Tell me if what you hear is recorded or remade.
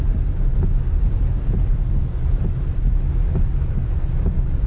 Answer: recorded